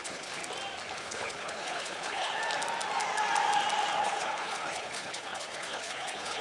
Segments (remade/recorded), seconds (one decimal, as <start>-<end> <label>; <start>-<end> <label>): 0.0-0.4 remade; 0.4-1.0 recorded; 1.0-2.4 remade; 2.4-4.0 recorded; 4.0-6.4 remade